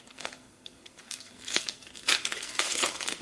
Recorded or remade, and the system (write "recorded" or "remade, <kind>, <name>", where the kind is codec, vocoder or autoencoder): remade, codec, SNAC